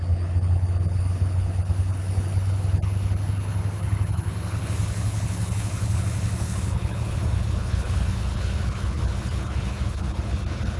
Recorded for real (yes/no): no